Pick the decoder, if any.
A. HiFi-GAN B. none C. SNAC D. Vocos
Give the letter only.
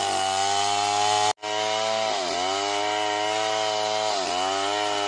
B